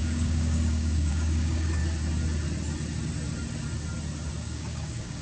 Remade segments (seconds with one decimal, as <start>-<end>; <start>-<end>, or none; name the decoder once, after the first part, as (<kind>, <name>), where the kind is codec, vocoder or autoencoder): 0.0-1.8 (codec, DAC); 4.4-5.2